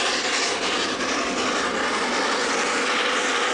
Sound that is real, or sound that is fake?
real